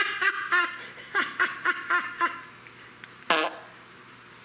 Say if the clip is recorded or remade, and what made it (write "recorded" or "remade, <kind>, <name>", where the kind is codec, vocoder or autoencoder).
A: recorded